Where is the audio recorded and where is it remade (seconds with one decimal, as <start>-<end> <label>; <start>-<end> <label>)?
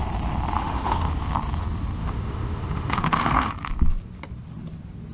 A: 0.0-0.6 recorded; 0.6-1.1 remade; 1.1-2.0 recorded; 2.0-3.5 remade; 3.5-5.1 recorded